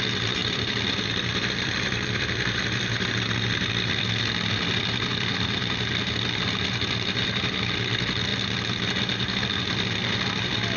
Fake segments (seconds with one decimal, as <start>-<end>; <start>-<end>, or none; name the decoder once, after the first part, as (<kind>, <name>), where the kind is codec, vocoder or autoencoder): 0.4-4.5 (vocoder, BigVGAN v2)